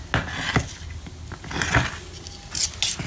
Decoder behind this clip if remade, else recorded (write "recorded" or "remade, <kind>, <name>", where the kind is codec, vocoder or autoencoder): recorded